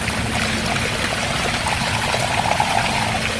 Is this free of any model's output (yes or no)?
yes